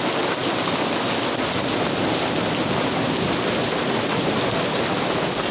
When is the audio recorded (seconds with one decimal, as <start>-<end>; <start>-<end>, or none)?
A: 0.0-5.5